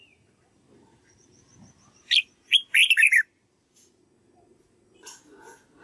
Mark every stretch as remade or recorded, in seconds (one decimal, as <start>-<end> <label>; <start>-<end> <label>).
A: 0.0-5.8 recorded